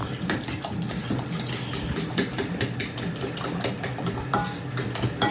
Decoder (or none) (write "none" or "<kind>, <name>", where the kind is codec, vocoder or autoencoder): none